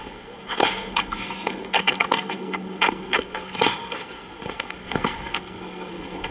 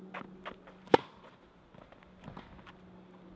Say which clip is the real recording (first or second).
second